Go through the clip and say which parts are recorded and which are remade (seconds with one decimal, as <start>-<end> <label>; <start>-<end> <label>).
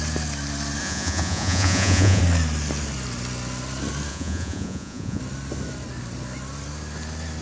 0.0-0.8 recorded; 0.8-2.2 remade; 2.2-4.1 recorded; 4.1-5.2 remade; 5.2-7.4 recorded